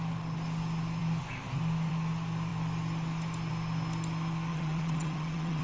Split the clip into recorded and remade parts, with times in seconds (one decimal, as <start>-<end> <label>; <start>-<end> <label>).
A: 0.0-4.5 recorded; 4.5-5.6 remade